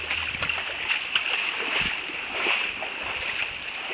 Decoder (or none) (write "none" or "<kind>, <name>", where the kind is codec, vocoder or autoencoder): vocoder, BigVGAN v2